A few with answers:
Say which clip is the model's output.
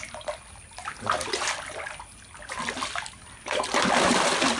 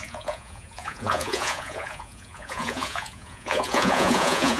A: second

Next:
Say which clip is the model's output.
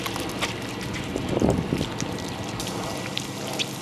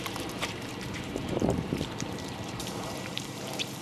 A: second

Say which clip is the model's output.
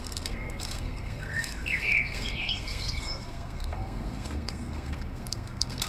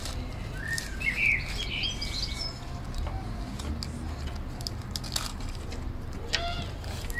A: first